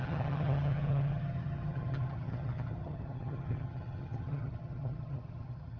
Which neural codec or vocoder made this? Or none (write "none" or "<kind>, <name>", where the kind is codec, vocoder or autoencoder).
vocoder, HiFi-GAN